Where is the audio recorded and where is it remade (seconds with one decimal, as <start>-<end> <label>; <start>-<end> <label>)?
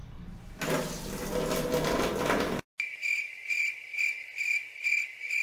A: 0.0-5.4 recorded